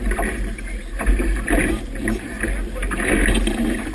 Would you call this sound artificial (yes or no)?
no